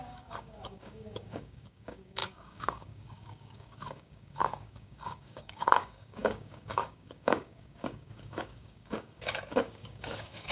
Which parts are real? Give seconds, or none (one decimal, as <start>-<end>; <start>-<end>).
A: none